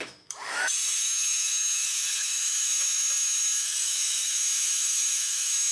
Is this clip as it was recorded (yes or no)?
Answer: no